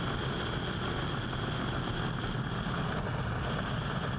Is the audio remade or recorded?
recorded